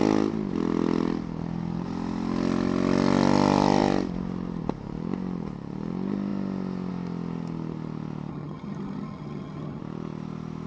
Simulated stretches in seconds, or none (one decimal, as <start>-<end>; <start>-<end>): 8.3-9.8